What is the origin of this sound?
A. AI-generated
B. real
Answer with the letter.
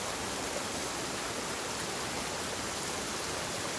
B